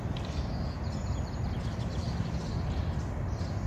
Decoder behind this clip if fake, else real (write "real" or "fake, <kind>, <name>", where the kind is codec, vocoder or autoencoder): real